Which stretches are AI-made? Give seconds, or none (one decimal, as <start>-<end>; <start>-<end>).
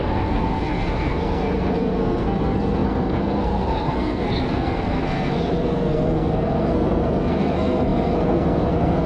0.0-9.1